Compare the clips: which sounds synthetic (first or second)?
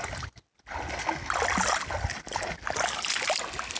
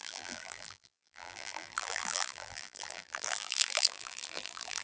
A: second